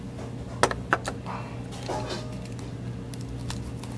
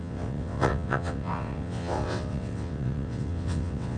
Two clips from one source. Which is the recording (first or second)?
first